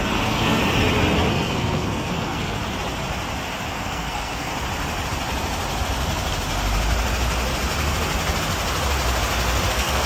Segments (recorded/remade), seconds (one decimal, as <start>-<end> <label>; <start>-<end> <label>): 0.0-0.6 remade; 0.6-1.3 recorded; 1.3-2.6 remade; 2.6-3.7 recorded; 3.7-4.5 remade; 4.5-9.7 recorded; 9.7-10.1 remade